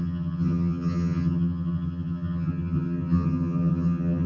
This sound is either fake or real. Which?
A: fake